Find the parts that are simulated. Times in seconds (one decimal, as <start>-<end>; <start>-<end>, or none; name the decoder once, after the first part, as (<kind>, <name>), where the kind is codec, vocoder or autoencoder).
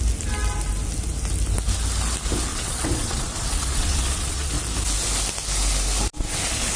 2.5-4.5 (vocoder, WaveNeXt)